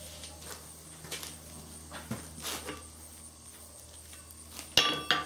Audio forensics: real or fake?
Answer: real